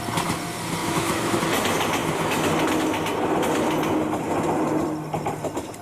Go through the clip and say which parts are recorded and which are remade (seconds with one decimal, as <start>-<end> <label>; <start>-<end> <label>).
0.0-0.8 recorded; 0.8-1.4 remade; 1.4-5.8 recorded